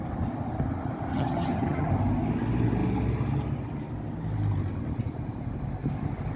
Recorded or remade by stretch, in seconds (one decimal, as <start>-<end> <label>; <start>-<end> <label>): 0.0-1.1 recorded; 1.1-1.9 remade; 1.9-6.4 recorded